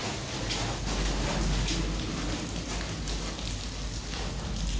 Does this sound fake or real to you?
real